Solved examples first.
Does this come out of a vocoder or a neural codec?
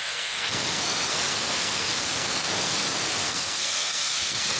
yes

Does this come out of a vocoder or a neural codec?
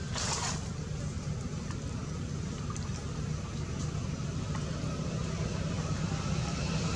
no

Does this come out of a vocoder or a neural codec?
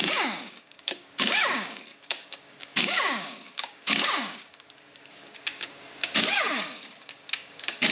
yes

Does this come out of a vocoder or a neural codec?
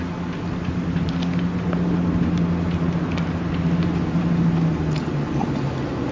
no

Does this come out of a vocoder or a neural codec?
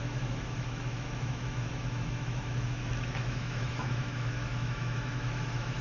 yes